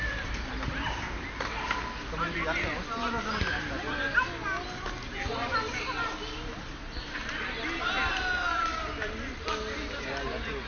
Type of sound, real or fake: real